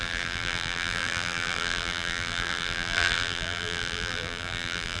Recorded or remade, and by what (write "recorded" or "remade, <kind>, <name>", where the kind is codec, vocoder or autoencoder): remade, vocoder, BigVGAN v2